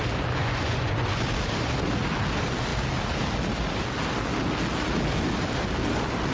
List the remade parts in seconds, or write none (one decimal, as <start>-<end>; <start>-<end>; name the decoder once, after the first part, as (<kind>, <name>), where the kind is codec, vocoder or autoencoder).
0.4-1.2 (vocoder, Vocos)